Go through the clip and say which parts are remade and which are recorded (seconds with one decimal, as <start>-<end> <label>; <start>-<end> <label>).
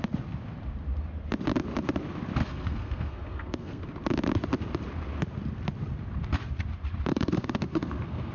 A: 0.0-2.4 recorded; 2.4-3.8 remade; 3.8-7.1 recorded; 7.1-8.3 remade